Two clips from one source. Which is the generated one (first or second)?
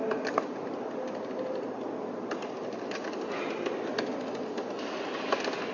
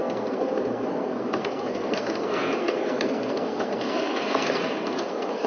second